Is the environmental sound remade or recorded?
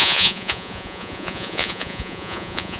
remade